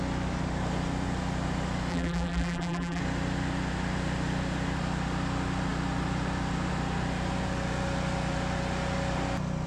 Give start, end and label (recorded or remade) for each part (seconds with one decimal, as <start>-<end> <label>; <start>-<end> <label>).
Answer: 0.0-1.9 recorded; 1.9-3.0 remade; 3.0-9.7 recorded